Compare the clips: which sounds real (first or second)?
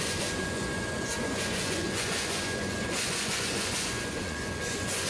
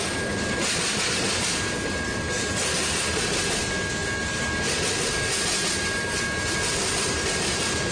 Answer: second